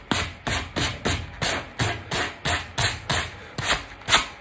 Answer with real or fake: real